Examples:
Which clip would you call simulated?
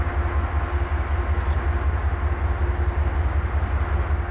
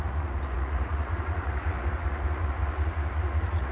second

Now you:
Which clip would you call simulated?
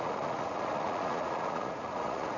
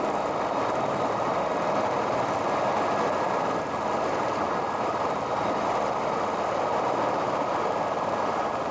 first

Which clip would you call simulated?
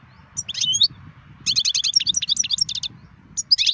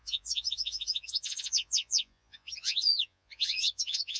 second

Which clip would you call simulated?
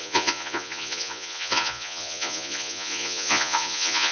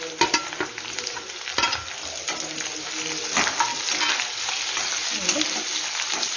first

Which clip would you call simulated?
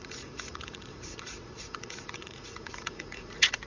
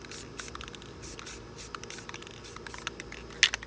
first